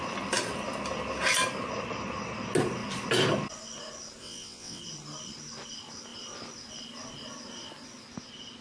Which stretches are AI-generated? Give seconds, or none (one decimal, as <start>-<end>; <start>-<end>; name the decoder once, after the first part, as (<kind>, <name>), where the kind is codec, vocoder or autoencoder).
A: 4.2-4.8 (vocoder, WaveNeXt)